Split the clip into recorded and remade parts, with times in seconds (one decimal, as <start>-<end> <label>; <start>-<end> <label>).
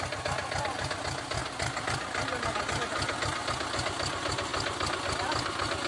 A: 0.0-5.9 recorded